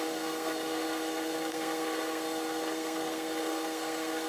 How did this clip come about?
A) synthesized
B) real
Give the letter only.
A